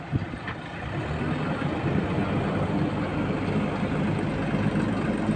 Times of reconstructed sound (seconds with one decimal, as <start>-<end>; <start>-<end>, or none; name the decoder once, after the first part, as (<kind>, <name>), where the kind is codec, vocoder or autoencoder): none